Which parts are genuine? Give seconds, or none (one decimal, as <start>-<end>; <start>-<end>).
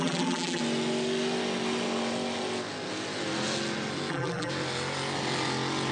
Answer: 0.6-4.1; 4.5-5.9